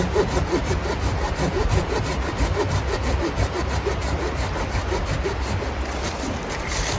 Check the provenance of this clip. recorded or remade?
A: recorded